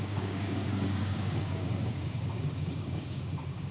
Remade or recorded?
remade